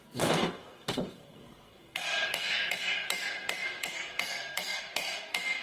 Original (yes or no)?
no